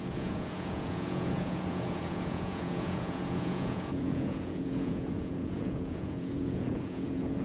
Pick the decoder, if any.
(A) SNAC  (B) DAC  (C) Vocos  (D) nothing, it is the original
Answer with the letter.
C